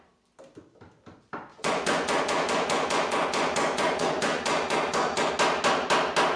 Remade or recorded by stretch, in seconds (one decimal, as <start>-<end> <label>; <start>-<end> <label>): 0.0-1.5 recorded; 1.5-5.3 remade; 5.3-6.4 recorded